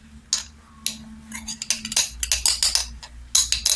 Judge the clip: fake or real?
real